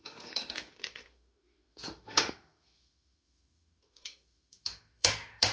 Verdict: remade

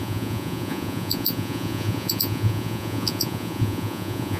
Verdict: remade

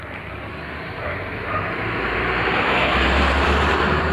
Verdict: remade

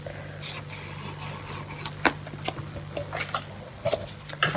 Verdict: recorded